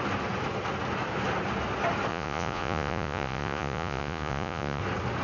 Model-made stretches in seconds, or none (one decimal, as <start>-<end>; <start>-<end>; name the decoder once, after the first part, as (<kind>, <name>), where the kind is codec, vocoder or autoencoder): 2.1-4.8 (vocoder, Vocos)